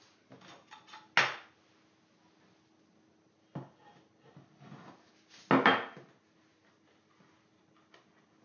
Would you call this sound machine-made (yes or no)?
no